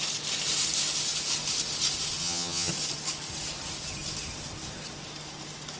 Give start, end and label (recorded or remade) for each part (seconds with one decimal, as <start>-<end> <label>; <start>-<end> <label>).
0.0-2.2 recorded; 2.2-2.7 remade; 2.7-5.8 recorded